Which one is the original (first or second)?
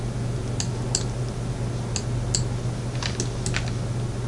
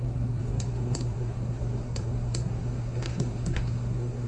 first